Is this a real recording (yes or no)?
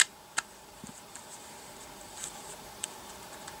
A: no